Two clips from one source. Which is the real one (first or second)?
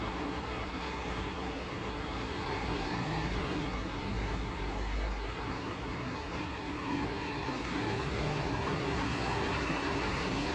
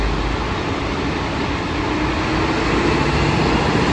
second